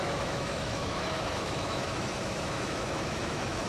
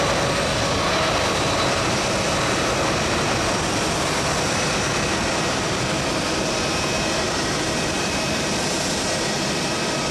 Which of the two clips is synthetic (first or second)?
first